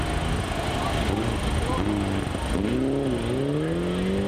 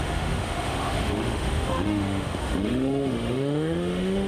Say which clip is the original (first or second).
first